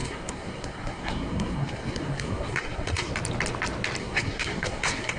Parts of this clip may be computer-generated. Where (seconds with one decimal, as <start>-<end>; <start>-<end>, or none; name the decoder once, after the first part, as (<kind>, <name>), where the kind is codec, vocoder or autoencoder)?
0.0-3.1 (codec, SNAC); 4.0-5.2